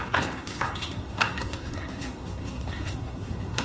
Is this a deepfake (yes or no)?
yes